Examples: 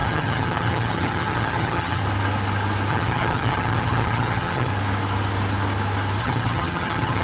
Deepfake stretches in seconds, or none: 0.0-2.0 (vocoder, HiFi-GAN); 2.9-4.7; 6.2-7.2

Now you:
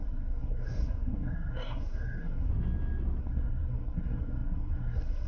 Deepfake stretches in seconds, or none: 0.0-2.5 (codec, SNAC); 3.2-5.3

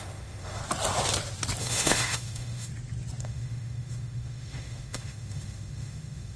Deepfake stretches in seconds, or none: 0.0-0.6 (autoencoder, DAC-VAE); 1.6-2.7; 3.2-6.4

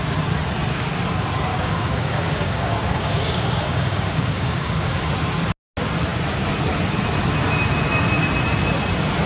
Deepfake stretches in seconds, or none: 1.5-5.1 (codec, DAC)

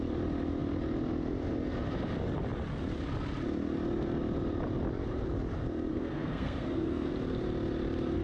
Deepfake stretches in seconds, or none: 5.9-7.1 (codec, SNAC)

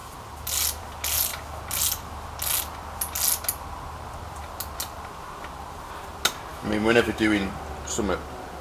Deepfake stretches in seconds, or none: 6.5-7.5 (autoencoder, DAC-VAE)

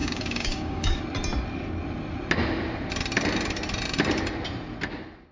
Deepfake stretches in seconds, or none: 0.0-1.0 (codec, DAC)